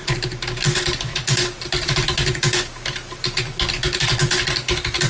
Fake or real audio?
real